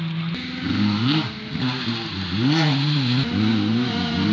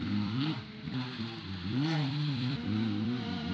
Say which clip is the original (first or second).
first